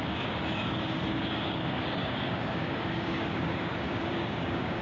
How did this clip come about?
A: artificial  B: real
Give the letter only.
A